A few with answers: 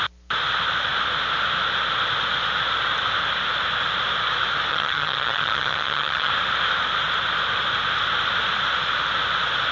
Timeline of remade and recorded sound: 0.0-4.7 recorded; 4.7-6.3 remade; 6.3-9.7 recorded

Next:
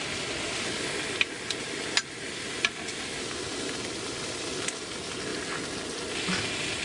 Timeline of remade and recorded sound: 0.0-6.8 recorded

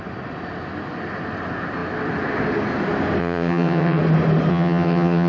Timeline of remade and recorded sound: 0.0-3.2 recorded; 3.2-4.0 remade; 4.0-4.5 recorded; 4.5-5.3 remade

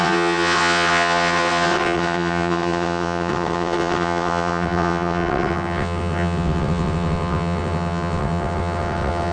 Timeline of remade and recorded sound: 0.0-9.3 remade